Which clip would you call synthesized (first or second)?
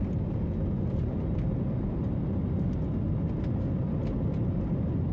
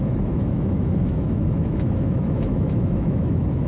second